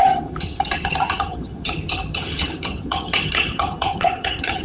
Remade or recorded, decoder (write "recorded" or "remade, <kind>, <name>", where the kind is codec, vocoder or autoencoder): remade, vocoder, HiFi-GAN